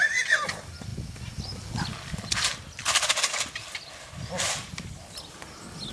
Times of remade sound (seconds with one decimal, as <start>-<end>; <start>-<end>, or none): none